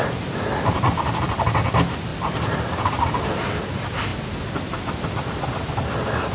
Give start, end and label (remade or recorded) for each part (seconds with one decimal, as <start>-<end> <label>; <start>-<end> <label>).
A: 0.0-0.5 remade; 0.5-2.1 recorded; 2.1-3.2 remade; 3.2-6.3 recorded